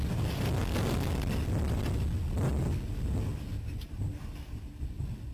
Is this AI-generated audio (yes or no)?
no